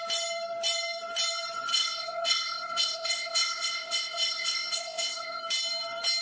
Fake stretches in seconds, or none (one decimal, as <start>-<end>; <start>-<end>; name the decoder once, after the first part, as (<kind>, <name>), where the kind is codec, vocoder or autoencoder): 1.7-5.4 (codec, ZipCodec)